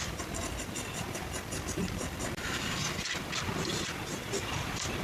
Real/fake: fake